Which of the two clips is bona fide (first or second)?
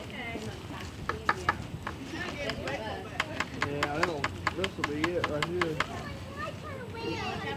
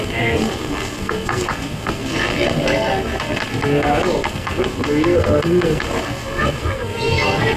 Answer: first